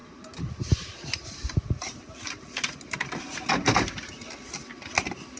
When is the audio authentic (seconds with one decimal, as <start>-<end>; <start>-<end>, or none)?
3.2-5.4